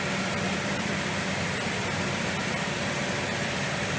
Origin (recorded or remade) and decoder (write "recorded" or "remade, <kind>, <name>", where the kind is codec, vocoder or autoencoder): recorded